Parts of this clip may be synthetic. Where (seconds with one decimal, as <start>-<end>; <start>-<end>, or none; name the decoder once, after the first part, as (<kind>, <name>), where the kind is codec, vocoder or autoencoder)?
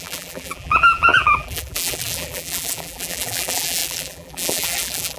0.0-5.2 (vocoder, BigVGAN v2)